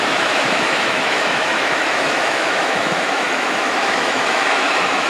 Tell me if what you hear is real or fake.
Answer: fake